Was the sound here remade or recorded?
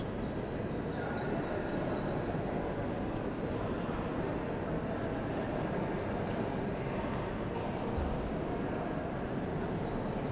recorded